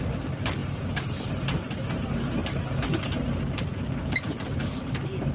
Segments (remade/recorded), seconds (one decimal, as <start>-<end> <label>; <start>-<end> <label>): 0.0-5.3 recorded